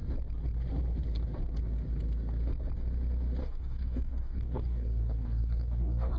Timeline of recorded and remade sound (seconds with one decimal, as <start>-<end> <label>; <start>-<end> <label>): 0.0-3.4 recorded; 3.4-6.2 remade